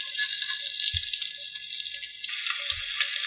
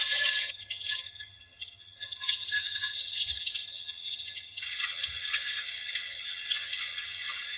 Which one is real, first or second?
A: first